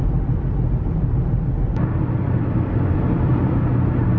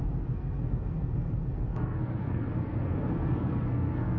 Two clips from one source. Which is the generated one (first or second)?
second